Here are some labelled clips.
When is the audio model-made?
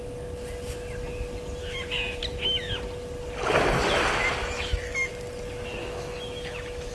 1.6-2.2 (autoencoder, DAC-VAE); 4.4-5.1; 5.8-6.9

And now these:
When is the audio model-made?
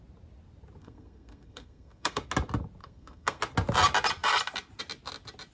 0.8-2.2 (codec, SNAC); 2.8-3.4